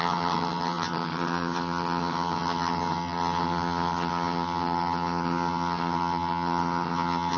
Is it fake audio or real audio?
fake